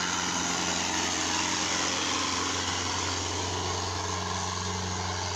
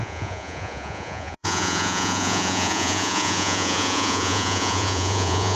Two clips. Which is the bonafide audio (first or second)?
first